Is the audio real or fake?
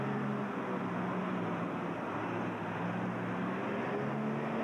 real